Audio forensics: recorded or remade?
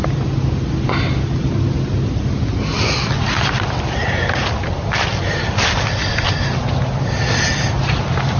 recorded